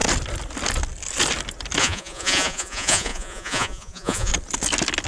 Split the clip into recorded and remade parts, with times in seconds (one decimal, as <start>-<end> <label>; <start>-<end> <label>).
0.0-1.8 recorded; 1.8-4.3 remade; 4.3-5.1 recorded